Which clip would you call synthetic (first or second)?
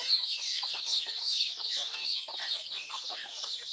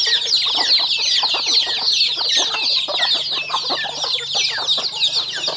first